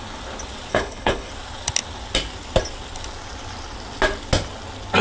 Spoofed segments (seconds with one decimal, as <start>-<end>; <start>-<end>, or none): 0.7-1.3